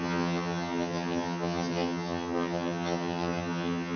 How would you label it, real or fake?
fake